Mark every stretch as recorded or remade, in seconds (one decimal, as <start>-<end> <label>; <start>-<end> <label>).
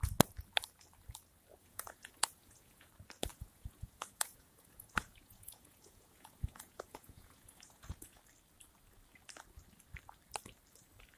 0.0-1.6 recorded; 1.6-2.9 remade; 2.9-3.3 recorded; 3.3-8.2 remade; 8.2-11.2 recorded